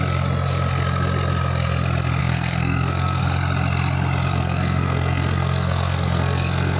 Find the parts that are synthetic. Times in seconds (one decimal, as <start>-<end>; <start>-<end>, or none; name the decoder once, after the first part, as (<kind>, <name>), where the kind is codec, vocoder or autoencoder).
2.2-3.2 (codec, SNAC); 4.3-6.8

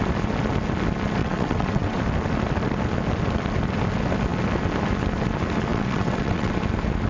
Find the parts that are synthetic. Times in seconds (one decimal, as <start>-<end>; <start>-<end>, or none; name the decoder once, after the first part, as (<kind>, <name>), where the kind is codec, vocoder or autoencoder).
1.2-2.0 (vocoder, WaveNeXt); 5.7-6.5